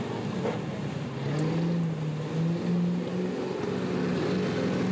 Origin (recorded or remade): recorded